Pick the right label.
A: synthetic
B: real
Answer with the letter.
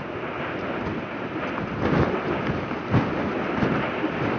B